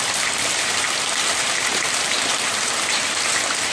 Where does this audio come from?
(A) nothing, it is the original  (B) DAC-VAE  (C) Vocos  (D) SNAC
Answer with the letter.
A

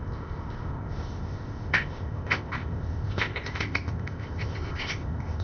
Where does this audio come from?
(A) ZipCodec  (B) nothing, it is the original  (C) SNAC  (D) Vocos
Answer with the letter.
A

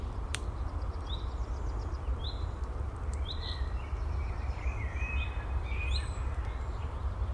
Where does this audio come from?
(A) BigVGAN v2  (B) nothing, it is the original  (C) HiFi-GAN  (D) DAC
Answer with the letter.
A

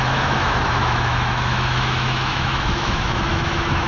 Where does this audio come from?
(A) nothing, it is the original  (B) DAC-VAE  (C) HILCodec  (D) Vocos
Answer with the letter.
B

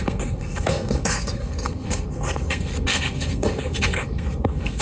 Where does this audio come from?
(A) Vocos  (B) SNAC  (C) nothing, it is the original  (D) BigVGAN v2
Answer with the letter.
B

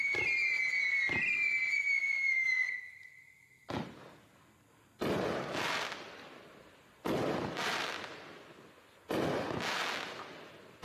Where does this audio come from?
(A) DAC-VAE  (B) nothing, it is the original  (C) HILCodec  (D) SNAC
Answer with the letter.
B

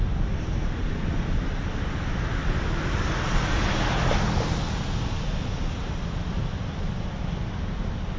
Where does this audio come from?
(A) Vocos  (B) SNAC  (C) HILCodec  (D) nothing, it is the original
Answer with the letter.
D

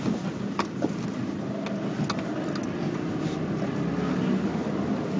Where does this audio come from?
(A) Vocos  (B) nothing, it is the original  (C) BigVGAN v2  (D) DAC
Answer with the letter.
B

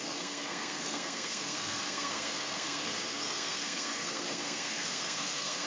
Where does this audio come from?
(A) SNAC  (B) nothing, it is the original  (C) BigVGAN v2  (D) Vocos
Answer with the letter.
A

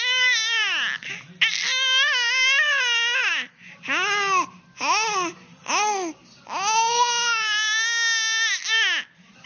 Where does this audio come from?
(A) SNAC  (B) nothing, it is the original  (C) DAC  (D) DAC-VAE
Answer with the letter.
B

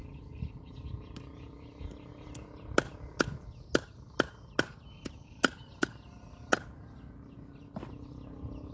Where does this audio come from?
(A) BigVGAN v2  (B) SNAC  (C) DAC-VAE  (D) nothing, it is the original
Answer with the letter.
D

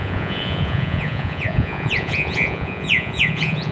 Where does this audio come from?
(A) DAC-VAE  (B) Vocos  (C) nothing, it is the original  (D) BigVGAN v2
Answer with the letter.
B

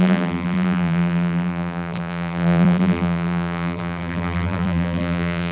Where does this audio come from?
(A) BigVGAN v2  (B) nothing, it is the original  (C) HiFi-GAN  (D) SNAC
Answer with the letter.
A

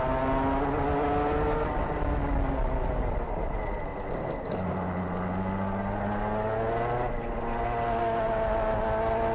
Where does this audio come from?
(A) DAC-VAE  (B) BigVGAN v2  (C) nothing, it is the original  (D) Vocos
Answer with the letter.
C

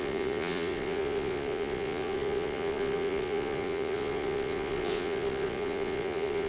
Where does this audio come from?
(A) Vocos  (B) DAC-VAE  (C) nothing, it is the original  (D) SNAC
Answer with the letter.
A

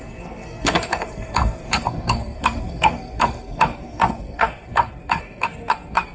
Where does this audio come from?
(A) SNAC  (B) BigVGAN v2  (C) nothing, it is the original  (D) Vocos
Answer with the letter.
A